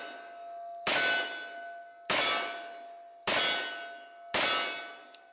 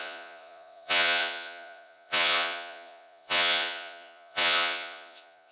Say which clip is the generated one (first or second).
second